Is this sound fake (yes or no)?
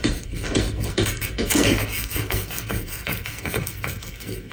yes